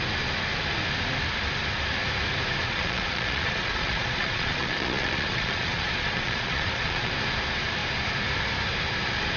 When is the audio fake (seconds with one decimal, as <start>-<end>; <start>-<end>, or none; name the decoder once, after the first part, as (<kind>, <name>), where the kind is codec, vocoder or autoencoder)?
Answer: 2.6-7.1 (vocoder, Vocos)